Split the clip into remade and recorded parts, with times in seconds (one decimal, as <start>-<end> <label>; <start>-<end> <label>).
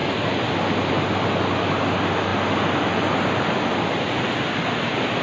0.0-5.2 recorded